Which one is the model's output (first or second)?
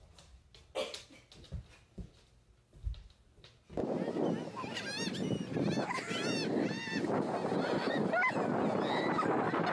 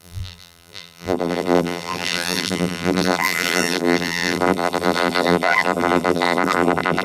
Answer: second